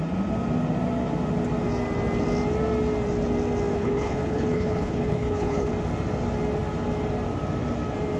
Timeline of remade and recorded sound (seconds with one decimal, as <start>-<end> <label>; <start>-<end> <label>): 0.0-3.7 recorded; 3.7-5.7 remade; 5.7-8.2 recorded

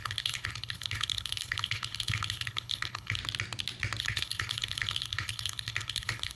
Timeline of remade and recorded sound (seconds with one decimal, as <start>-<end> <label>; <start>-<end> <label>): 0.0-3.2 remade; 3.2-4.0 recorded; 4.0-6.4 remade

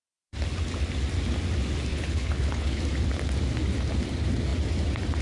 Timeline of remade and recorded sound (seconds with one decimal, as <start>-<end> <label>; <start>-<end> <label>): 0.0-1.9 recorded; 1.9-2.8 remade; 2.8-5.2 recorded

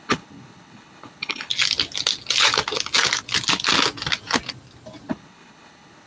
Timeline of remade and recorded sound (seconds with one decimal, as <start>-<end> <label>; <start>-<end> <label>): 0.0-1.5 remade; 1.5-5.1 recorded; 5.1-6.1 remade

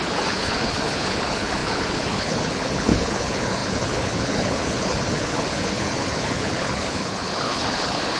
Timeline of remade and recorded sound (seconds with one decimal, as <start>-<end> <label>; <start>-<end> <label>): 0.0-8.2 remade

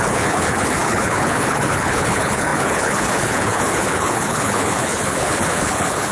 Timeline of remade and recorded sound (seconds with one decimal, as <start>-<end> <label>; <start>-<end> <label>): 0.0-6.1 remade

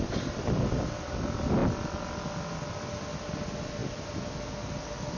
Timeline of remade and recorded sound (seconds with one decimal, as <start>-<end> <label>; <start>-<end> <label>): 0.0-5.2 recorded

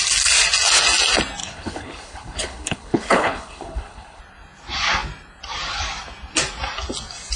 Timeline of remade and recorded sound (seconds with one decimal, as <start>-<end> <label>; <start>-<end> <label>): 0.0-1.4 recorded; 1.4-4.2 remade; 4.2-7.4 recorded